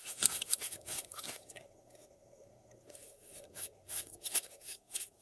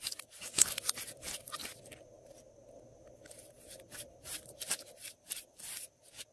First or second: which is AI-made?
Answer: first